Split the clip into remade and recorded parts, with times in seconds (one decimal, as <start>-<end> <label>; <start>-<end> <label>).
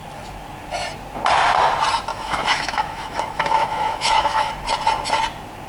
0.0-2.1 recorded; 2.1-4.5 remade; 4.5-5.7 recorded